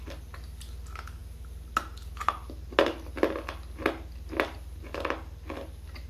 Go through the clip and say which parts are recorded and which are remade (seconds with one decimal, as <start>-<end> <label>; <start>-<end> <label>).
0.0-6.1 recorded